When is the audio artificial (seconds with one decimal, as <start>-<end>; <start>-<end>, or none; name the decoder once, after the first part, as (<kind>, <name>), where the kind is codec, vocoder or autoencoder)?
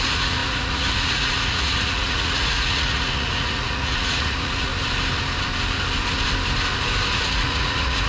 0.0-4.7 (vocoder, Vocos); 7.1-8.1